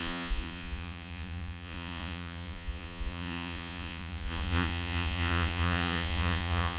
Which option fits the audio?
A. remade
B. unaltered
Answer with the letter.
A